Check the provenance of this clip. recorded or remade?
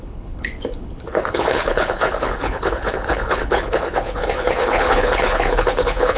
remade